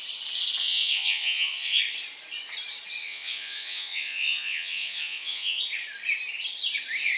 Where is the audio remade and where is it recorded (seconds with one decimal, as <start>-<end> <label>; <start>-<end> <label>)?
0.0-0.6 recorded; 0.6-1.8 remade; 1.8-3.0 recorded; 3.0-5.6 remade; 5.6-7.2 recorded